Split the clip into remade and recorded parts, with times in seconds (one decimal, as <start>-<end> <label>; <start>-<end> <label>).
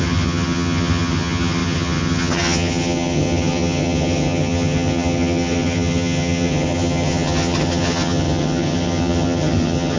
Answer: 0.0-10.0 remade